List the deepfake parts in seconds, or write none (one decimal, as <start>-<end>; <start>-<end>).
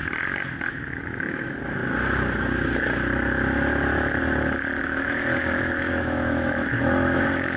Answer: 0.7-1.8; 4.8-7.6